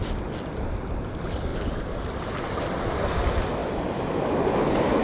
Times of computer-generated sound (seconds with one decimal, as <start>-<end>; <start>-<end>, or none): 1.5-2.0